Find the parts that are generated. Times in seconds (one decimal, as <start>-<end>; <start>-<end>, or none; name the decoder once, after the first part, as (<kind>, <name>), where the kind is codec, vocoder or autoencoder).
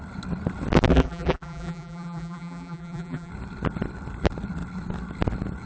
0.9-3.3 (vocoder, BigVGAN v2)